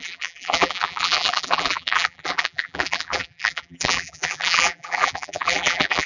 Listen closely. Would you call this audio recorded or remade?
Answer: remade